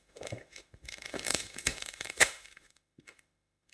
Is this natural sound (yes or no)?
no